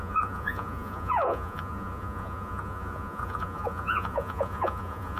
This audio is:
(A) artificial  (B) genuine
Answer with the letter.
A